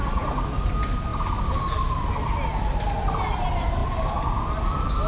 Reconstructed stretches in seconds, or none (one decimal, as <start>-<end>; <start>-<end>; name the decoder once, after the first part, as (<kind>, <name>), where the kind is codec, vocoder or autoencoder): none

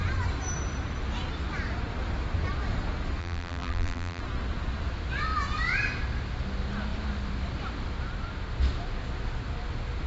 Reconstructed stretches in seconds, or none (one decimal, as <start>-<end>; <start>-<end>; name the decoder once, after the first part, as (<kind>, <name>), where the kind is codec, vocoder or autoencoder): 3.2-4.2 (vocoder, BigVGAN v2)